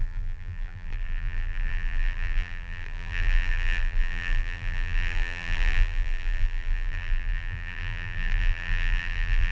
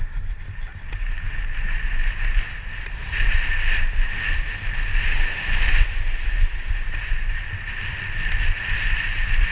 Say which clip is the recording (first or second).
second